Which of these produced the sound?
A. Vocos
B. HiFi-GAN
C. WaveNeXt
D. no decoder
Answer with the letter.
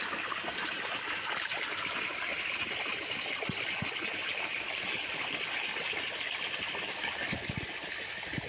D